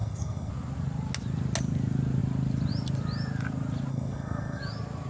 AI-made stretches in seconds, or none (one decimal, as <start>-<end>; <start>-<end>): 0.0-0.5; 3.9-4.6

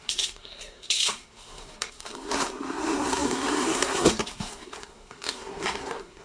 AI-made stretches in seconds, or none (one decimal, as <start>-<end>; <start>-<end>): 0.0-6.2

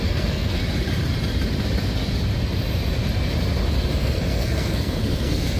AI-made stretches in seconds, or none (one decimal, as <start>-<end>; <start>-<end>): 0.0-0.6; 4.0-5.6

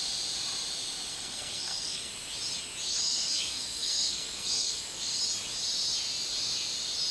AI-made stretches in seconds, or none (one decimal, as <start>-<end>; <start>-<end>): 1.1-2.1; 2.9-5.2